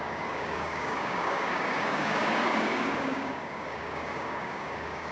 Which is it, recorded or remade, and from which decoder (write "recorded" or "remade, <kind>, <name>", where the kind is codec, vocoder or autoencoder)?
remade, codec, DAC